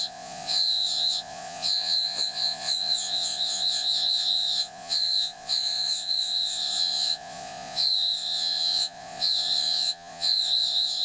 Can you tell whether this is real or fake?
fake